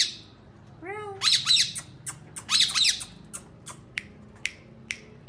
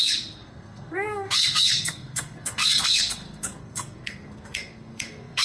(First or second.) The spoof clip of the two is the second